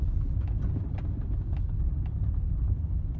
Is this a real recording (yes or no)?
yes